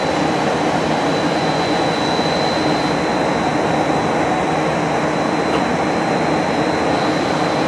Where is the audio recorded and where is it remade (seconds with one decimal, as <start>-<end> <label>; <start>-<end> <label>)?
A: 0.0-1.3 recorded; 1.3-2.4 remade; 2.4-7.7 recorded